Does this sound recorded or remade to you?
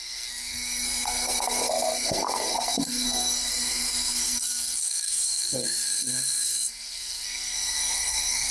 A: remade